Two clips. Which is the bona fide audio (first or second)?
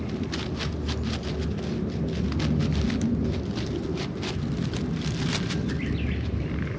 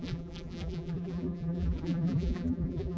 first